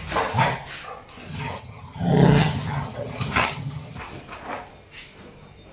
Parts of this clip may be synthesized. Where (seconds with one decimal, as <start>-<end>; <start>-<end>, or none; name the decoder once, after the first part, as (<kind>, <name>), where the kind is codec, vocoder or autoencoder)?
1.3-4.0 (vocoder, HiFi-GAN)